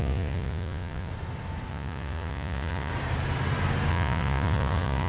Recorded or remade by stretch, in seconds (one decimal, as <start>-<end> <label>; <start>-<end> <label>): 0.0-1.1 remade; 1.1-1.7 recorded; 1.7-2.9 remade; 2.9-3.9 recorded; 3.9-5.1 remade